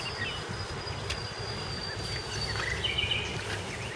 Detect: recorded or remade recorded